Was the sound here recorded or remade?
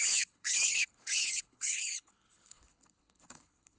remade